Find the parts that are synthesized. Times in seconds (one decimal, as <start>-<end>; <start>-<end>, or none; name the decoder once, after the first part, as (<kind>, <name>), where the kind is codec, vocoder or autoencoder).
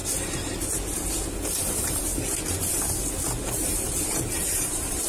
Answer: 1.7-2.1 (vocoder, BigVGAN v2); 3.5-5.1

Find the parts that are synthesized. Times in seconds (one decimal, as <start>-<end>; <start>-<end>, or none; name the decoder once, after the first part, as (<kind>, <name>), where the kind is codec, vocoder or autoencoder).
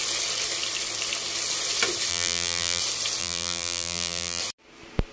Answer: 2.1-2.8 (vocoder, BigVGAN v2); 3.2-4.4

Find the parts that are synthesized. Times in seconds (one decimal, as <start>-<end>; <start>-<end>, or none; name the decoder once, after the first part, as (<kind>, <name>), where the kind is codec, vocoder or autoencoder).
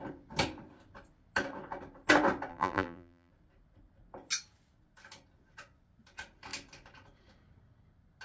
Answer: 2.5-3.3 (vocoder, BigVGAN v2)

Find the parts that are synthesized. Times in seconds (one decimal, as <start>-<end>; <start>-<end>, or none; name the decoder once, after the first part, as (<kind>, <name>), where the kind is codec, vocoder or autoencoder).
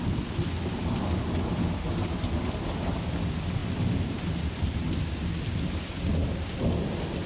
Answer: 3.6-4.9 (vocoder, BigVGAN v2)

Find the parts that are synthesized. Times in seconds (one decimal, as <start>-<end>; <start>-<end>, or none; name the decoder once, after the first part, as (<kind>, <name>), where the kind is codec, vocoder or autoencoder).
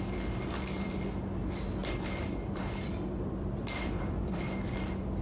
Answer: 1.8-4.7 (vocoder, BigVGAN v2)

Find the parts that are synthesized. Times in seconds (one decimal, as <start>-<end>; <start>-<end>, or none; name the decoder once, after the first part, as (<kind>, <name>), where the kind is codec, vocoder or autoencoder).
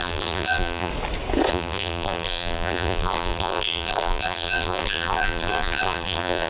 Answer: 0.0-0.9 (vocoder, BigVGAN v2); 1.5-6.5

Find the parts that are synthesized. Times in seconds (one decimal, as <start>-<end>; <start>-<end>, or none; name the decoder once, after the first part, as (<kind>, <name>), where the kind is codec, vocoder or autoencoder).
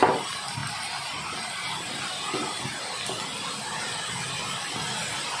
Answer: none